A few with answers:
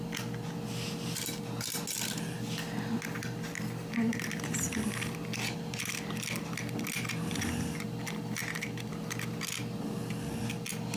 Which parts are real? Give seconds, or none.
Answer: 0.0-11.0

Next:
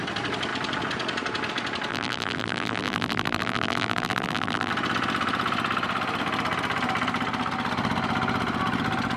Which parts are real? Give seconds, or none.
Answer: 0.0-1.9; 4.7-9.2

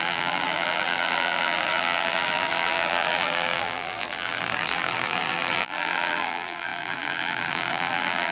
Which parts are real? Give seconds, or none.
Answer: none

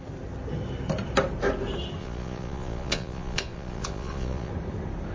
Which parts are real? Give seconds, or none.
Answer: 0.0-2.0; 4.5-5.1

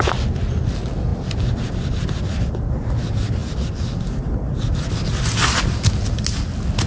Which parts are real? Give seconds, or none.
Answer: 0.0-6.9

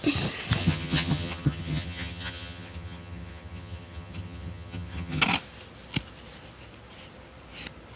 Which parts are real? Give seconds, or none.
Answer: 0.0-0.6; 5.2-8.0

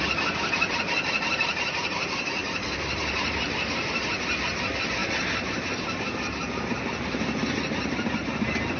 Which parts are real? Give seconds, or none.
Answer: 0.0-2.4; 4.0-8.8

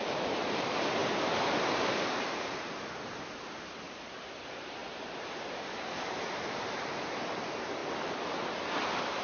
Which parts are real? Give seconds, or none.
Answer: 1.0-1.6; 7.8-8.7